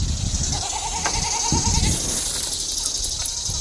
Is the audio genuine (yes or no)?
yes